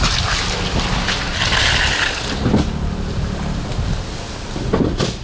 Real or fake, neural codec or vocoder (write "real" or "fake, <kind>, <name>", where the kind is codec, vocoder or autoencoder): real